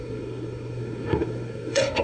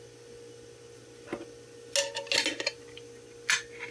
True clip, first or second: second